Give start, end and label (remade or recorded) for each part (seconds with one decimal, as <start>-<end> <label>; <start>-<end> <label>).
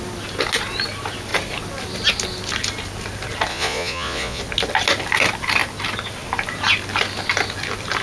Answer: 0.0-3.5 recorded; 3.5-4.4 remade; 4.4-8.0 recorded